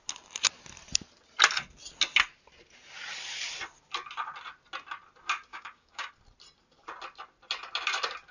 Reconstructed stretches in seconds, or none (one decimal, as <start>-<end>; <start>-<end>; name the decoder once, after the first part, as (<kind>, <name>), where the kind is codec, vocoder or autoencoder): 5.5-6.1 (codec, DAC)